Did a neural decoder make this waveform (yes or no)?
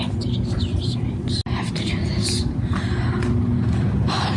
no